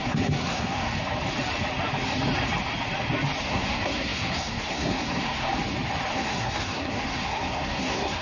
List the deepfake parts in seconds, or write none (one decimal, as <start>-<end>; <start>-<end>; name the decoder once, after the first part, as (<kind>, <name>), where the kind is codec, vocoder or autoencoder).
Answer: 0.0-0.9 (codec, SNAC); 3.4-5.5; 6.1-8.2